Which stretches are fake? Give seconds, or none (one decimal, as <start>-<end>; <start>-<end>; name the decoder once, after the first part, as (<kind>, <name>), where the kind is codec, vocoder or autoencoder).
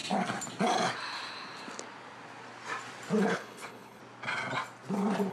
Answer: 3.2-4.0 (codec, HILCodec)